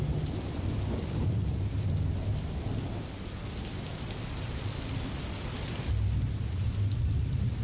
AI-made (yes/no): no